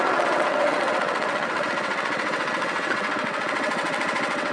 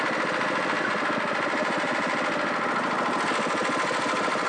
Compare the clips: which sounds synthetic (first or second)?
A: first